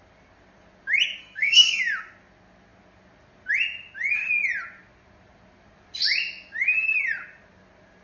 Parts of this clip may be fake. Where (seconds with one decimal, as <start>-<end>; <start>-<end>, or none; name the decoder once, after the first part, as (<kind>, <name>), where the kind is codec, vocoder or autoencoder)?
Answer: 1.2-1.8 (codec, SNAC)